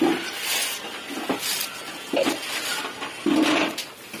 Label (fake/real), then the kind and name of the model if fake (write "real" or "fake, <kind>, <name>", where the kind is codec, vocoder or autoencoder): real